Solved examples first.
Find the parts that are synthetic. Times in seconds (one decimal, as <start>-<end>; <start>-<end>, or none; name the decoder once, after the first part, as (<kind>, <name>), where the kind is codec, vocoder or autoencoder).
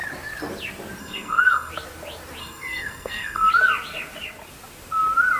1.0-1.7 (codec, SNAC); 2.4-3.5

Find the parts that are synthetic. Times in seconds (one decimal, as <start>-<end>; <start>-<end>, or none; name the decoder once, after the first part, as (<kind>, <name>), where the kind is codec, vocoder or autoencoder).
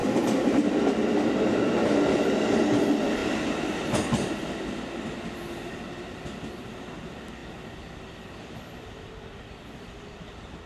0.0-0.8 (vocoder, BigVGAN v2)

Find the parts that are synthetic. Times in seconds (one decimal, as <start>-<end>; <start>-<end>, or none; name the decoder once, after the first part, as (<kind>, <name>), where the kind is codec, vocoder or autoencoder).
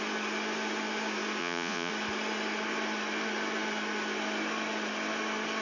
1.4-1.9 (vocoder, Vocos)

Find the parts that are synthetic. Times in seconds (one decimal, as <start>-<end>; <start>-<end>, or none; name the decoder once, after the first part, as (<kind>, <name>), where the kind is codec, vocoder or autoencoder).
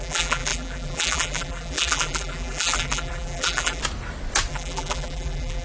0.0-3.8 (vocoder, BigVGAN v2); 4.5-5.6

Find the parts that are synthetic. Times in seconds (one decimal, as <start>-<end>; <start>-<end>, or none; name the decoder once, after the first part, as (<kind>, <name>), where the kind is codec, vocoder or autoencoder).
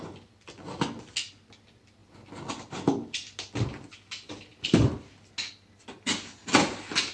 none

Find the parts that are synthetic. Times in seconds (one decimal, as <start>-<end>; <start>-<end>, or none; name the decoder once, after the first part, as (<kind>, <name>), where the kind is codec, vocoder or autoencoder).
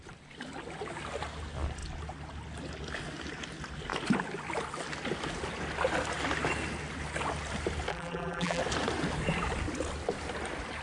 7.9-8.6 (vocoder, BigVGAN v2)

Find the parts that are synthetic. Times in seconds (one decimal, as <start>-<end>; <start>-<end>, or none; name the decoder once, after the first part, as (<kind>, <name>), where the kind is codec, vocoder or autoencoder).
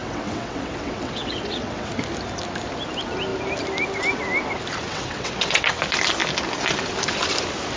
0.0-1.9 (vocoder, WaveNeXt); 4.9-5.8